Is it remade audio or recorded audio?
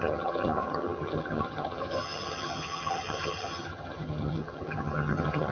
remade